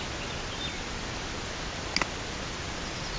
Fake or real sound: real